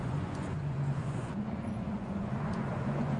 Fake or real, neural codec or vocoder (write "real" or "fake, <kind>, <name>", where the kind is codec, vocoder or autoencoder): fake, vocoder, Vocos